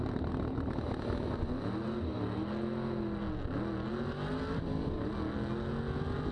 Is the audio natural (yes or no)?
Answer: yes